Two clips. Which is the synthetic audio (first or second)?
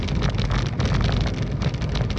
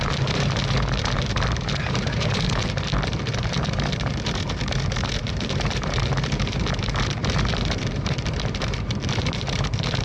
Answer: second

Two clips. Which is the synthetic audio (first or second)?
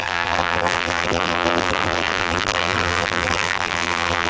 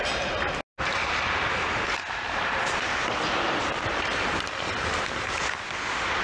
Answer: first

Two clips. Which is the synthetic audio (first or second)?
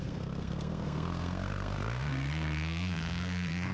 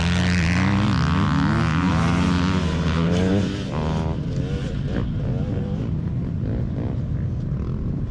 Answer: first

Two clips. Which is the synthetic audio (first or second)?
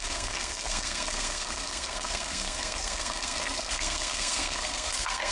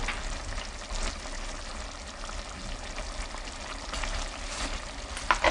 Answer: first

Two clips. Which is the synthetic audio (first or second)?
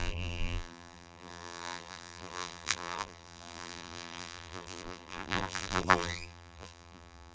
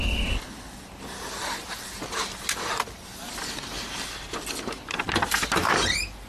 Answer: first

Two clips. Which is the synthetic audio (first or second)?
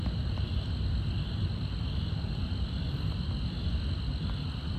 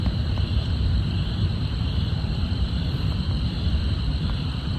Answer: second